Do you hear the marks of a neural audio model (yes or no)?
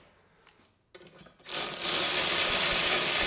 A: no